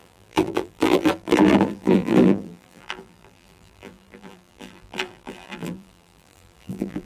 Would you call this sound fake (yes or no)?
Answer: yes